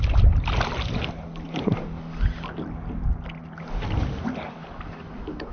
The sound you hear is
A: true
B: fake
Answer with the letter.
A